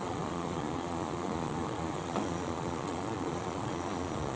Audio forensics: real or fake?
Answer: fake